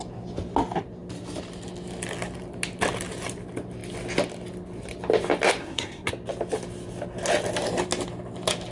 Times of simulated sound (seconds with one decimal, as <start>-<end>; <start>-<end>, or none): 5.6-6.1